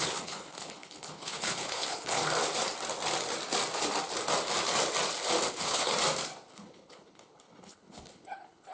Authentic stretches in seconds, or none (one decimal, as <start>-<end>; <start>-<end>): 2.2-5.5; 5.9-6.5